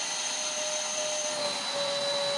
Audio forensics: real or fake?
real